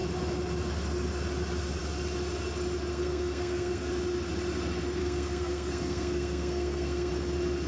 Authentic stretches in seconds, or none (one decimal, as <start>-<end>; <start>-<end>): 0.0-2.9; 3.9-5.0; 7.1-7.7